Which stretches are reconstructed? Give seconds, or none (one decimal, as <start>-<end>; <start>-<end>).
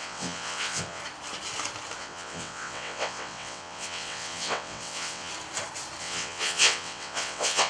0.0-1.0; 2.0-5.3; 6.0-7.7